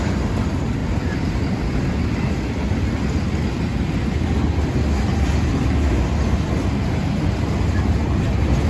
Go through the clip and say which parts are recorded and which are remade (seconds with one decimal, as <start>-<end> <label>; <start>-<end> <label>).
0.0-8.7 recorded